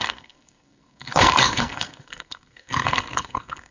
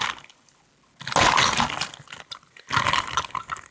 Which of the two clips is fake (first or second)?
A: first